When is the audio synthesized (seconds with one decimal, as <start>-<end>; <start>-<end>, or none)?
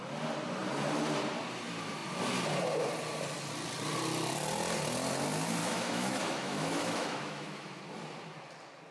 5.6-7.8